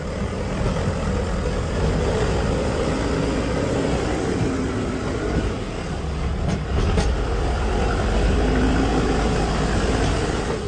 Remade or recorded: recorded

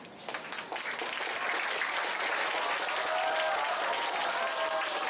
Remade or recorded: recorded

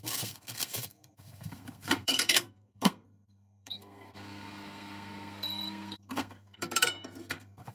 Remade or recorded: remade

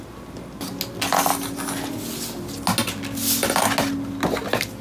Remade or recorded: recorded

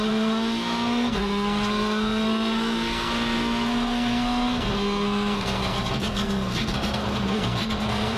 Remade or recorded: remade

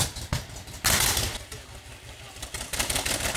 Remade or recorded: recorded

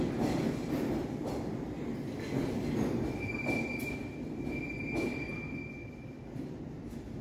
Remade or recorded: recorded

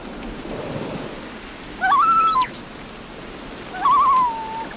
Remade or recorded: recorded